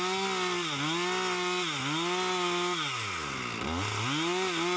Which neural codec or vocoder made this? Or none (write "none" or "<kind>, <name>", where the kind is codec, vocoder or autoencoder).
none